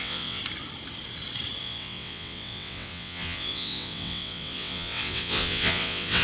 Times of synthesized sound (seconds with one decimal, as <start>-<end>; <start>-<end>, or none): 0.0-0.4; 1.6-6.2